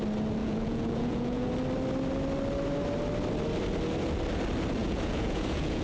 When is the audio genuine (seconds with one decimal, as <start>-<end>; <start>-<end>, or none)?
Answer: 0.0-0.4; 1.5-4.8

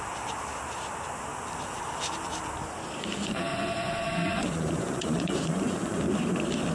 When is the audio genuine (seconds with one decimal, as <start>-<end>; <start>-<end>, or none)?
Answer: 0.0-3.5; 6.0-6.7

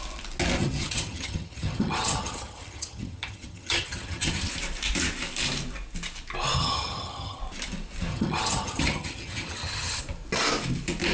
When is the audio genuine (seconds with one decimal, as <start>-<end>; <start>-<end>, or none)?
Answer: 0.0-0.6; 4.5-6.6; 7.4-8.1; 10.0-11.1

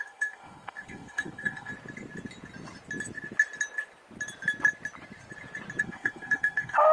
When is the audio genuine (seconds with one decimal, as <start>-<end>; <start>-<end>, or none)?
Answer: 1.7-5.8